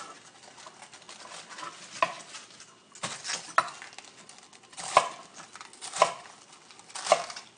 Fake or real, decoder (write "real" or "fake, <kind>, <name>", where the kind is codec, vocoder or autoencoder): real